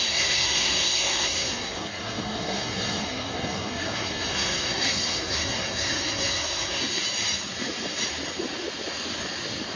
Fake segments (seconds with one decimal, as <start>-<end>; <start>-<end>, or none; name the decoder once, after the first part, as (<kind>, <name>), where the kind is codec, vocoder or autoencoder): 0.0-7.0 (codec, SNAC)

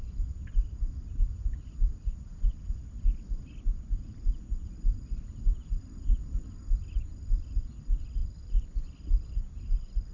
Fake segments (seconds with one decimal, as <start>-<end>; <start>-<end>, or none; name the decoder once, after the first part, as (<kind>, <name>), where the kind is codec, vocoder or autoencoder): none